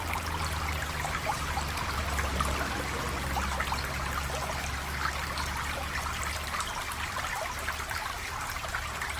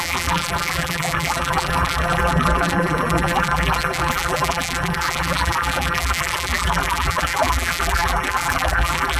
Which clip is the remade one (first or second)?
second